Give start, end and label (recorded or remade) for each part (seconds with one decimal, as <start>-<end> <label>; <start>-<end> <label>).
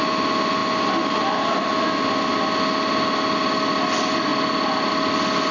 0.0-5.5 recorded